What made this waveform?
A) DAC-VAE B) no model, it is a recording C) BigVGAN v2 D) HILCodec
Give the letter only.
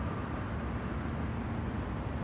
B